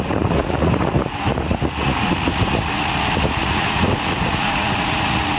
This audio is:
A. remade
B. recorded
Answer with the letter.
A